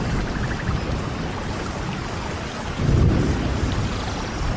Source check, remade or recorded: recorded